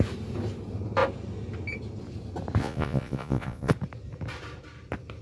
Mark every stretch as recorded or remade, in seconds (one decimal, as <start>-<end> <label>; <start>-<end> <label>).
0.0-2.6 recorded; 2.6-3.7 remade; 3.7-5.2 recorded